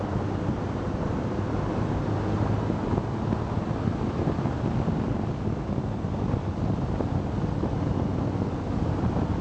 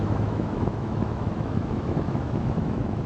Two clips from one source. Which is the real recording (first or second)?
first